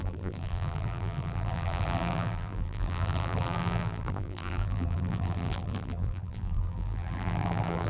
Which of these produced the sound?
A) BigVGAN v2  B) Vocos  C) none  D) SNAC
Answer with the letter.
A